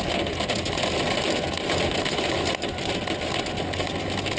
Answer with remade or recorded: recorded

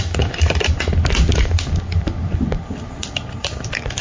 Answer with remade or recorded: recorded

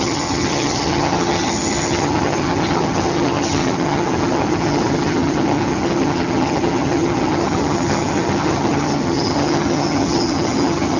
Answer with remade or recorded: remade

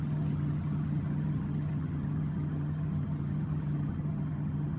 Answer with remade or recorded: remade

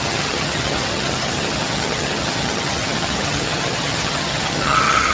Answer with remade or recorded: remade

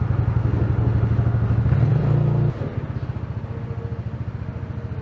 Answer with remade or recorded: recorded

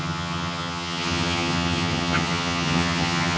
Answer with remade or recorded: remade